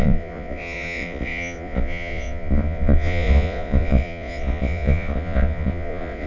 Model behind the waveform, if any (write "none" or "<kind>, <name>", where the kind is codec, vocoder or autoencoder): vocoder, Vocos